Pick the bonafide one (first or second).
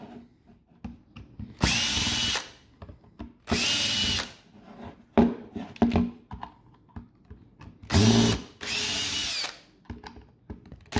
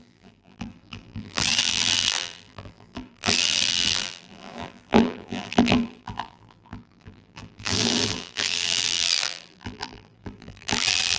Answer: first